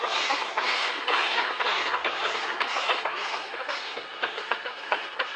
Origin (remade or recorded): remade